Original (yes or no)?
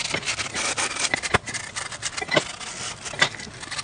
yes